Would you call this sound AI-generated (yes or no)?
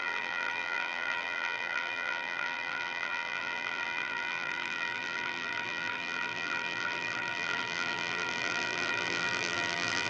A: yes